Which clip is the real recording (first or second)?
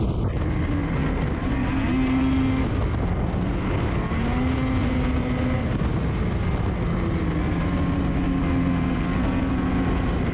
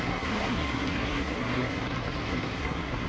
first